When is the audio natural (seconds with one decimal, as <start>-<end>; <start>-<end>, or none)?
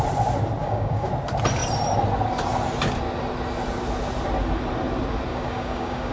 0.0-0.6; 1.1-5.3